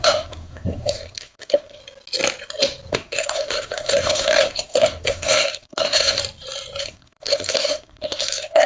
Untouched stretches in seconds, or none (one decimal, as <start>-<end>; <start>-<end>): 1.8-2.9; 6.2-6.8